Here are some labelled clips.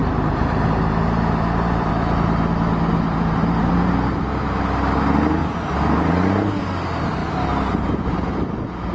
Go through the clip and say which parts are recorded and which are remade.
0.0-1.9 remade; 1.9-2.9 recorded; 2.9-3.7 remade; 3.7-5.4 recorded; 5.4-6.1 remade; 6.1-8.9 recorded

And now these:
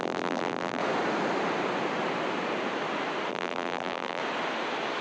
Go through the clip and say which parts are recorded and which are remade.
0.0-0.8 remade; 0.8-3.3 recorded; 3.3-4.2 remade; 4.2-5.0 recorded

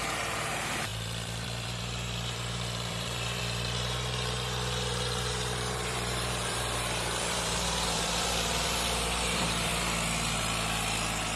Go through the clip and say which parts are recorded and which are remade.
0.0-9.7 remade; 9.7-11.4 recorded

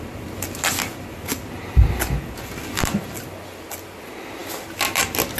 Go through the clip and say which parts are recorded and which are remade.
0.0-5.4 recorded

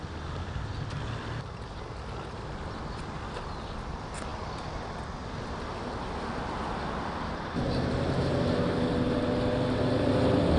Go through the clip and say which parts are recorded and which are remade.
0.0-10.6 recorded

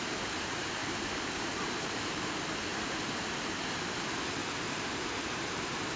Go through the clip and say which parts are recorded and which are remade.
0.0-0.8 recorded; 0.8-2.2 remade; 2.2-4.4 recorded; 4.4-6.0 remade

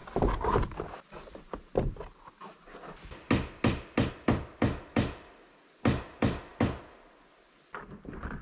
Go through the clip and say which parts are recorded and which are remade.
0.0-4.1 recorded; 4.1-6.5 remade; 6.5-7.8 recorded; 7.8-8.4 remade

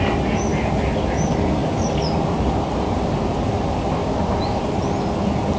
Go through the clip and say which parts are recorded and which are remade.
0.0-4.0 recorded; 4.0-4.8 remade; 4.8-5.6 recorded